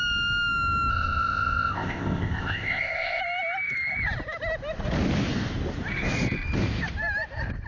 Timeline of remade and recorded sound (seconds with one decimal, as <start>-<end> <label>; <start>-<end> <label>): 0.0-0.9 recorded; 0.9-3.2 remade; 3.2-7.7 recorded